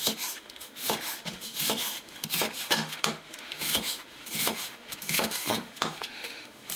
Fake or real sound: fake